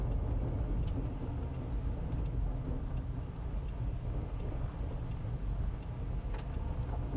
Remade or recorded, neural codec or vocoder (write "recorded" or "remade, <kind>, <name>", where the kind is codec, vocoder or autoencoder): recorded